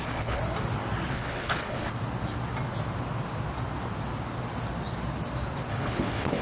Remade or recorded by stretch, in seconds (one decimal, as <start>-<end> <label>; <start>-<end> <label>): 0.0-0.4 remade; 0.4-1.1 recorded; 1.1-1.9 remade; 1.9-5.7 recorded; 5.7-6.4 remade